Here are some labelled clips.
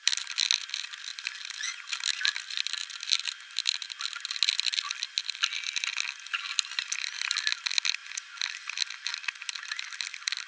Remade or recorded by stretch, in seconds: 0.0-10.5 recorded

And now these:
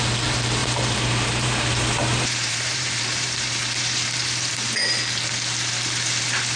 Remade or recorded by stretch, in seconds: 0.0-0.6 recorded; 0.6-4.5 remade; 4.5-6.6 recorded

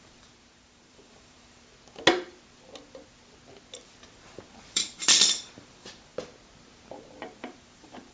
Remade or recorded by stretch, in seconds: 0.0-1.7 remade; 1.7-3.8 recorded; 3.8-6.1 remade; 6.1-7.4 recorded; 7.4-8.1 remade

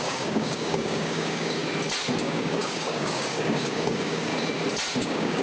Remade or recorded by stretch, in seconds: 0.0-1.6 remade; 1.6-2.2 recorded; 2.2-4.3 remade; 4.3-5.0 recorded; 5.0-5.4 remade

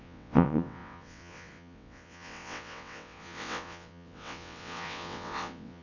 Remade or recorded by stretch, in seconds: 0.0-5.8 remade